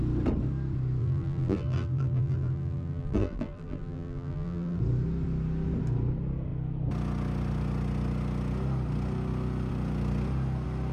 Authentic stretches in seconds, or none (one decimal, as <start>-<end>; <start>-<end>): 0.0-1.0; 4.8-10.9

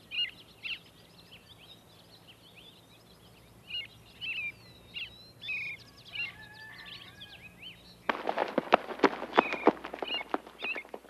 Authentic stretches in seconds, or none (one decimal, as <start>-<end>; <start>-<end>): 0.0-11.1

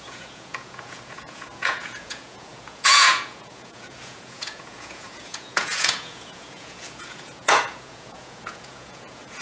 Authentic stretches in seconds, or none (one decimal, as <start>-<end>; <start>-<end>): none

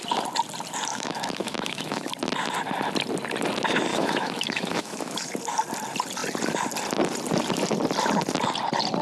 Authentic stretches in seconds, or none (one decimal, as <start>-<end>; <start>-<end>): 0.0-0.9; 2.1-3.9; 5.3-9.0

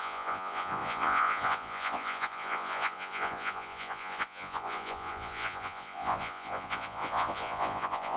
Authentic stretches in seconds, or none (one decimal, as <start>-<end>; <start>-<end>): none

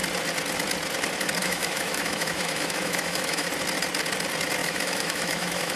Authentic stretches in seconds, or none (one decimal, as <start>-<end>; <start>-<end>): 0.0-1.4; 3.5-4.6

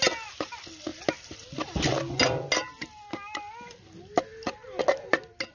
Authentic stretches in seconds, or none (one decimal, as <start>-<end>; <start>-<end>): 0.0-5.5